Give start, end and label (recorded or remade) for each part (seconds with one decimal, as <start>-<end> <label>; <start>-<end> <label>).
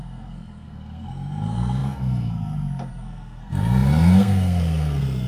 0.0-5.3 remade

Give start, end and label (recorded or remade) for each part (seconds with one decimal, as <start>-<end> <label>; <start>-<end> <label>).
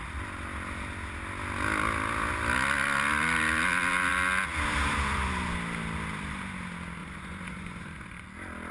0.0-7.0 recorded; 7.0-8.2 remade; 8.2-8.7 recorded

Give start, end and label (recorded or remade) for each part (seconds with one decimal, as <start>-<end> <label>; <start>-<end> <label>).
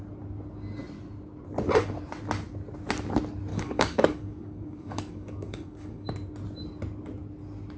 0.0-3.5 recorded; 3.5-6.1 remade; 6.1-7.8 recorded